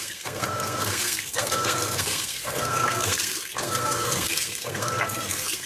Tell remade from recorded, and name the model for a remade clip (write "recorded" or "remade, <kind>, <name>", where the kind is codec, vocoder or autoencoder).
remade, codec, SNAC